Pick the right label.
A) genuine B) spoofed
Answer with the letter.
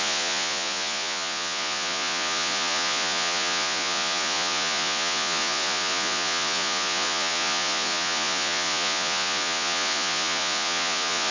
B